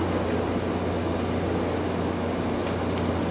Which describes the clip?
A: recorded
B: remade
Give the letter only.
A